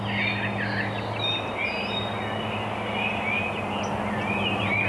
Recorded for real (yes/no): yes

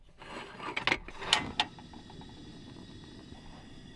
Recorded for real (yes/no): yes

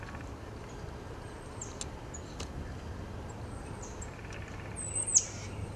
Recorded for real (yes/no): yes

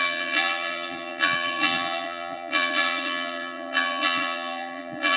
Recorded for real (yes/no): no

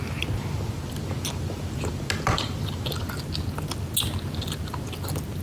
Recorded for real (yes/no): yes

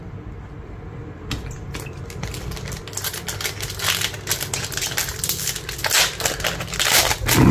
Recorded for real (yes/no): yes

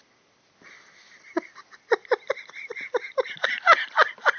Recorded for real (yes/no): yes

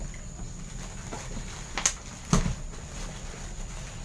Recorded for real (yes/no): yes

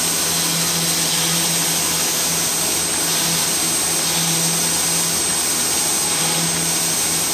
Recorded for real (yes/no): yes